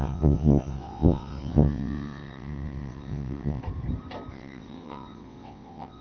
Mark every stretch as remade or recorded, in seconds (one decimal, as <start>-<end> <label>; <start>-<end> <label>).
0.0-3.6 remade; 3.6-4.3 recorded; 4.3-6.0 remade